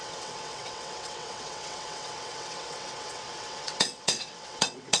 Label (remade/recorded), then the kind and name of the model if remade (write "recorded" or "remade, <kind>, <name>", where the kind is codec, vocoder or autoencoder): remade, vocoder, WaveNeXt